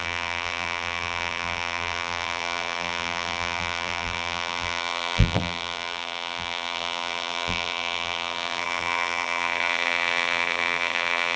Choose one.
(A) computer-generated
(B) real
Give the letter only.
A